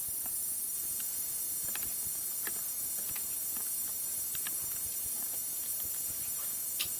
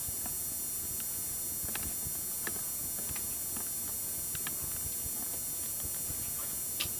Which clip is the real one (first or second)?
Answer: second